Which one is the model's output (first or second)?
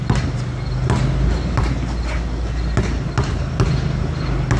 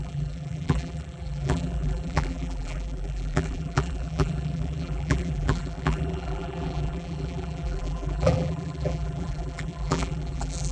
second